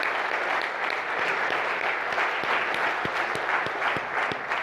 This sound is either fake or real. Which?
real